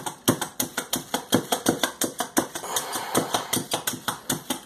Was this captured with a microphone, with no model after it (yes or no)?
yes